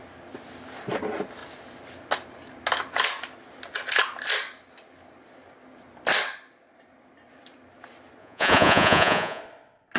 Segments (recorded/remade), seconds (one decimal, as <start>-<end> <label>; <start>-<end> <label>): 0.0-8.2 recorded; 8.2-9.4 remade; 9.4-10.0 recorded